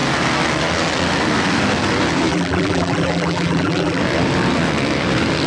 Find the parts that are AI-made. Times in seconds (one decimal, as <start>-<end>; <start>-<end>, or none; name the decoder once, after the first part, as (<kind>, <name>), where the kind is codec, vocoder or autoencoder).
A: 2.3-4.0 (vocoder, BigVGAN v2)